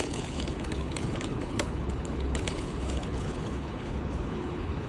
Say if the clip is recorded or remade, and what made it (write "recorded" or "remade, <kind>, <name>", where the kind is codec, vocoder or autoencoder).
remade, codec, HILCodec